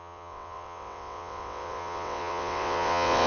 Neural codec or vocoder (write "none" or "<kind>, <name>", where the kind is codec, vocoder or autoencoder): vocoder, WaveNeXt